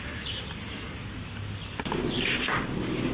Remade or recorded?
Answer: recorded